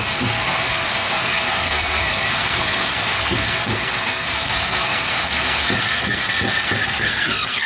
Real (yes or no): no